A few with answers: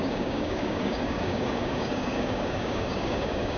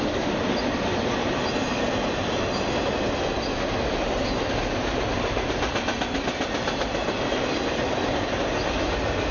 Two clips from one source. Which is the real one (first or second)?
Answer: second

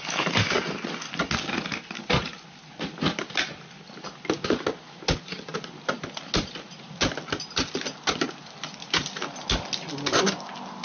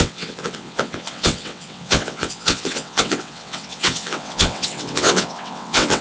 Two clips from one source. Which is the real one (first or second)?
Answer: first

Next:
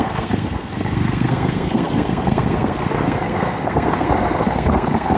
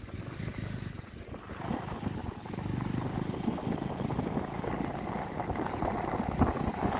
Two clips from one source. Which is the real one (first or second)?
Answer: second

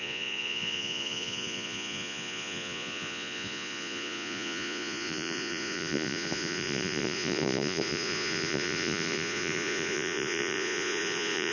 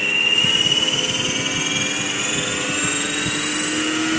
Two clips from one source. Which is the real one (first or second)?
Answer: second